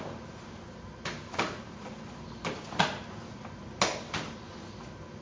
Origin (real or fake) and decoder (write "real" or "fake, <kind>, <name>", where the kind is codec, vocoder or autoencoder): real